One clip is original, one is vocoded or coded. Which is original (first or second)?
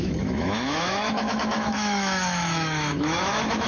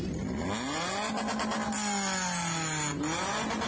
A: second